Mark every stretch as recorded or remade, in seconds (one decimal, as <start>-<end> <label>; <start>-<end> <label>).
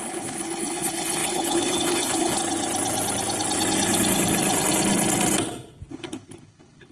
0.0-2.4 remade; 2.4-5.9 recorded; 5.9-6.9 remade